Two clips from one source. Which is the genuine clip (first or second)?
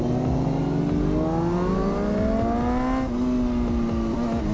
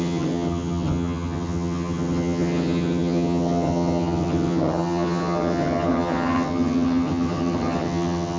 first